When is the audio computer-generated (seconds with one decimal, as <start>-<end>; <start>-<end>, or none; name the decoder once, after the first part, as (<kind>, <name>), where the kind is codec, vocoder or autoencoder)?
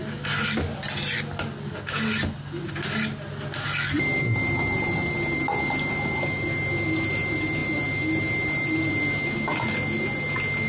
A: none